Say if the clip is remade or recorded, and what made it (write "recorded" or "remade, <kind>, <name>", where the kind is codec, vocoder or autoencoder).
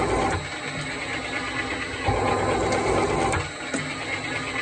recorded